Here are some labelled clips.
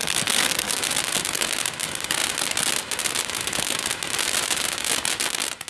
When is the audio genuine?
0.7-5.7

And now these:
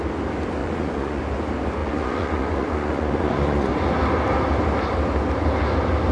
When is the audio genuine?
0.0-0.6; 1.2-1.8; 3.7-6.1

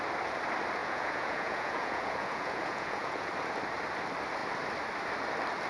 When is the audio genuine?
0.0-0.8; 3.3-5.7

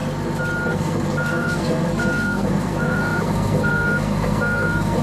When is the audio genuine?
0.0-0.7

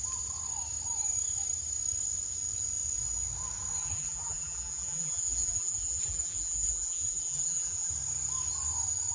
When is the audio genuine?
0.0-3.8; 7.9-9.1

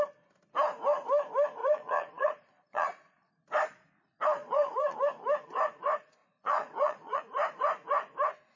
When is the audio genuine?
0.0-1.6; 3.3-4.4; 5.0-6.2; 7.2-8.6

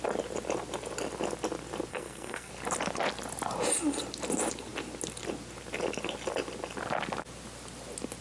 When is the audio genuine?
0.0-1.9; 2.5-8.2

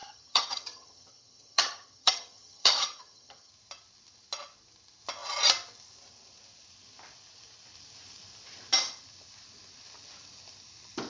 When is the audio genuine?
3.5-11.1